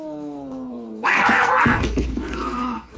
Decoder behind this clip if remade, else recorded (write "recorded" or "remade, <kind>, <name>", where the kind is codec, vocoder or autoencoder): remade, codec, SNAC